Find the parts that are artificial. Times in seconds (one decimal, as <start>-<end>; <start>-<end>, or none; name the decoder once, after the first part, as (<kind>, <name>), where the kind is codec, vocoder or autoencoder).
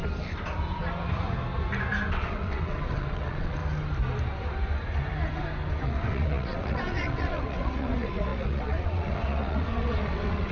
2.1-3.6 (vocoder, WaveNeXt); 5.8-10.5